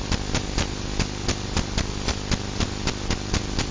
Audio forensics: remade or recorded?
recorded